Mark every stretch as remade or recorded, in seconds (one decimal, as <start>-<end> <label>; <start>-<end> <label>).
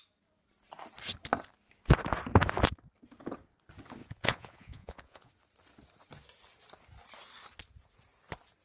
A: 0.0-4.0 recorded; 4.0-5.3 remade; 5.3-8.6 recorded